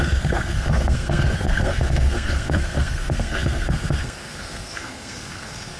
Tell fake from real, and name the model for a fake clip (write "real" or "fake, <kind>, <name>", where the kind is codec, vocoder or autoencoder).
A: fake, codec, SNAC